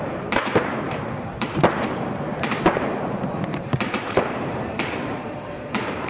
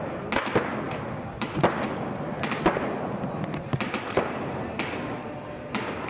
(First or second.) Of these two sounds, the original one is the second